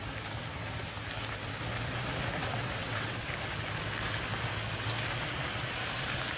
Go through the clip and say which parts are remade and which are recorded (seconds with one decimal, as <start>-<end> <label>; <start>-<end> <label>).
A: 0.0-2.4 recorded; 2.4-3.3 remade; 3.3-6.4 recorded

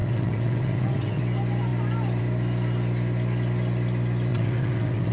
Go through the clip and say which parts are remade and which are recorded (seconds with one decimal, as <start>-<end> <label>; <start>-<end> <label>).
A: 0.0-1.2 remade; 1.2-4.3 recorded; 4.3-5.1 remade

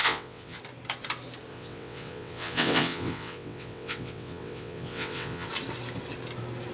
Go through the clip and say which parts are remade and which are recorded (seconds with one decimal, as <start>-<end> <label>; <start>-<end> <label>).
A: 0.0-0.6 remade; 0.6-1.5 recorded; 1.5-5.5 remade; 5.5-6.7 recorded

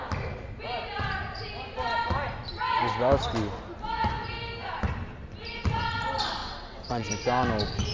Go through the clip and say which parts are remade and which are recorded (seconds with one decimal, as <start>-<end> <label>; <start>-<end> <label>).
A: 0.0-6.4 recorded; 6.4-7.1 remade; 7.1-7.9 recorded

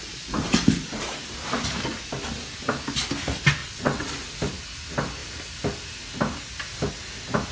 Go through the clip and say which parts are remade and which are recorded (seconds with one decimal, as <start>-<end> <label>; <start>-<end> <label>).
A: 0.0-3.6 recorded; 3.6-4.1 remade; 4.1-7.5 recorded

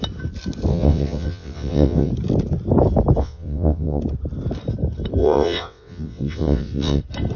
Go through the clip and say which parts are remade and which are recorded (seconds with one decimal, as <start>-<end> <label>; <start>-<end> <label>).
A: 0.0-0.7 recorded; 0.7-2.1 remade; 2.1-3.2 recorded; 3.2-4.0 remade; 4.0-5.2 recorded; 5.2-7.0 remade; 7.0-7.4 recorded

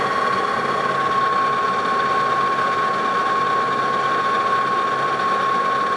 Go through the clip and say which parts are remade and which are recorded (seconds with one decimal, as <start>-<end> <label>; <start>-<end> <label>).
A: 0.0-6.0 recorded

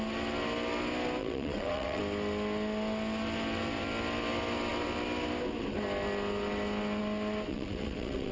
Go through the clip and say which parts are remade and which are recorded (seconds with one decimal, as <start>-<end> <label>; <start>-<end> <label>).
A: 0.0-1.2 recorded; 1.2-2.0 remade; 2.0-7.5 recorded; 7.5-8.3 remade